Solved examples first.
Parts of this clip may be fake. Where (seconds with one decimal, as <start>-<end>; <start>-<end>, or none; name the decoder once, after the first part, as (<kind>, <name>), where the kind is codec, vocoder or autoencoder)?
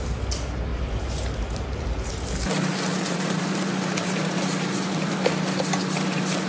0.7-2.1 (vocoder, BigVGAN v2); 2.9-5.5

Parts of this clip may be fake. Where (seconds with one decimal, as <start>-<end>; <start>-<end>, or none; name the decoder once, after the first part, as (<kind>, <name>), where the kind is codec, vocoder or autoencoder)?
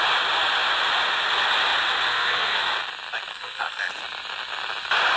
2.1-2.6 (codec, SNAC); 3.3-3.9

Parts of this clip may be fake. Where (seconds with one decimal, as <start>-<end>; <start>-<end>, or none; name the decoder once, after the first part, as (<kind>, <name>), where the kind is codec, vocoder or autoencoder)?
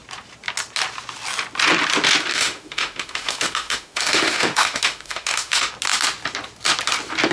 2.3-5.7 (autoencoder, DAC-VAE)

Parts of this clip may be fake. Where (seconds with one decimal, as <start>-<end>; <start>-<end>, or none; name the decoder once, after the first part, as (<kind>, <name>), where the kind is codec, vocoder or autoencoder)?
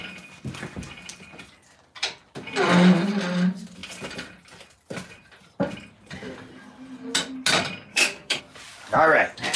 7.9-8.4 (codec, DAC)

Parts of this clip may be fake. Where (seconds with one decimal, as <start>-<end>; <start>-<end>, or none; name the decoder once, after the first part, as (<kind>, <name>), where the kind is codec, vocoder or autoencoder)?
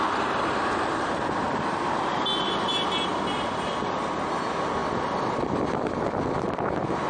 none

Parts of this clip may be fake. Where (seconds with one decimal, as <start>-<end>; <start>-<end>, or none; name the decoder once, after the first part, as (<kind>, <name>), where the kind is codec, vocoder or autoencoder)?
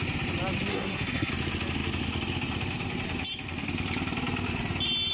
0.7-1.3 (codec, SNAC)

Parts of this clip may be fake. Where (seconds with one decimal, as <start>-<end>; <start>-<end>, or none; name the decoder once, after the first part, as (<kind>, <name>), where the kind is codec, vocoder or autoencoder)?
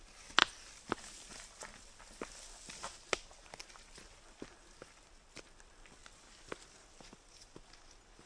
none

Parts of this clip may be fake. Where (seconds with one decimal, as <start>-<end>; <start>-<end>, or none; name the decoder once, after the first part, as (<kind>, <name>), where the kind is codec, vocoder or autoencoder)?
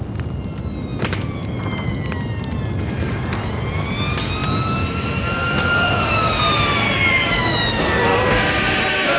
none